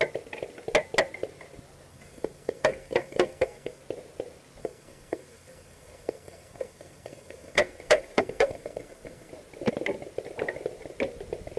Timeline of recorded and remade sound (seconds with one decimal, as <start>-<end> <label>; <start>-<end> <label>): 0.0-1.9 recorded; 1.9-3.8 remade; 3.8-4.6 recorded; 4.6-9.3 remade; 9.3-11.6 recorded

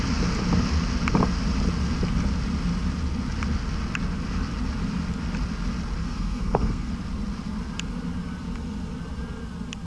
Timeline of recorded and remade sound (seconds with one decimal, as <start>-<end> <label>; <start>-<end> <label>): 0.0-6.0 recorded; 6.0-6.9 remade; 6.9-9.9 recorded